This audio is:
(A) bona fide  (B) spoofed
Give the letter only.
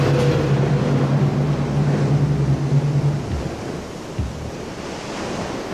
A